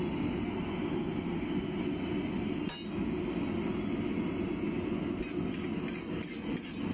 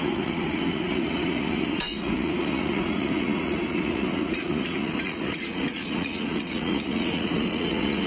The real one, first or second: first